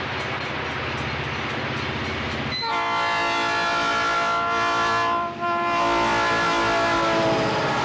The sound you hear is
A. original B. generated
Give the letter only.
A